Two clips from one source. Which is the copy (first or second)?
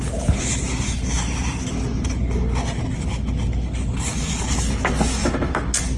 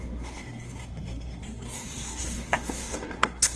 second